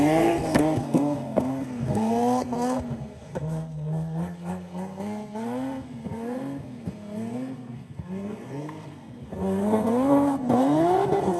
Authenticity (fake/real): fake